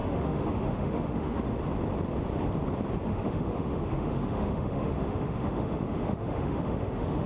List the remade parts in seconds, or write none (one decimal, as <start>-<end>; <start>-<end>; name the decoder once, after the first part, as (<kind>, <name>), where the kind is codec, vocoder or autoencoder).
0.0-1.6 (autoencoder, DAC-VAE); 3.1-7.3